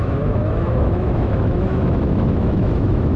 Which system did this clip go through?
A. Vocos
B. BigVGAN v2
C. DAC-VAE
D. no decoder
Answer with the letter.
C